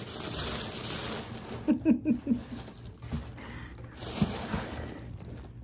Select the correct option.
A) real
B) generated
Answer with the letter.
A